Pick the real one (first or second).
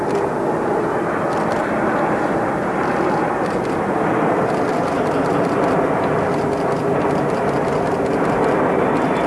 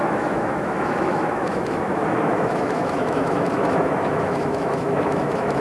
first